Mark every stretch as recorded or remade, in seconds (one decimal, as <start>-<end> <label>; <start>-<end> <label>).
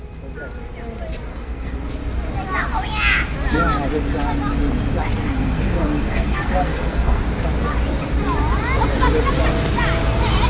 0.0-1.3 recorded; 1.3-1.9 remade; 1.9-5.2 recorded; 5.2-7.2 remade; 7.2-10.5 recorded